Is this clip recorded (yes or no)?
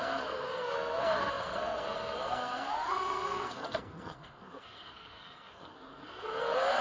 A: no